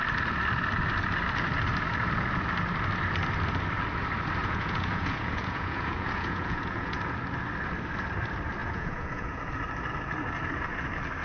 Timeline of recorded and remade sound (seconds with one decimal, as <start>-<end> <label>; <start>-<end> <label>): 0.0-4.4 recorded; 4.4-7.0 remade; 7.0-8.6 recorded; 8.6-9.4 remade; 9.4-11.2 recorded